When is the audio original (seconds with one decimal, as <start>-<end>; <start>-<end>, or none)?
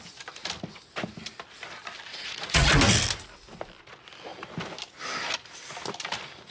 0.0-2.1; 2.7-6.5